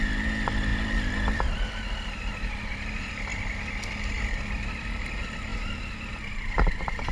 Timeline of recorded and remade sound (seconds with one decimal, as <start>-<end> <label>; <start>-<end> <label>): 0.0-0.7 recorded; 0.7-1.5 remade; 1.5-7.1 recorded